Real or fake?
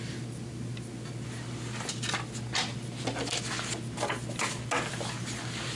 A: real